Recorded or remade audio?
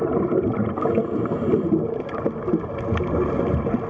recorded